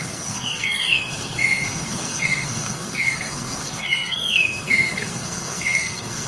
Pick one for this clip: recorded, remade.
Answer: remade